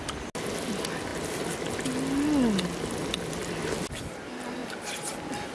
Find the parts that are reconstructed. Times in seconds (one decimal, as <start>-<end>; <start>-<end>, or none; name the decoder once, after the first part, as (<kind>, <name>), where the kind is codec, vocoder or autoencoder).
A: none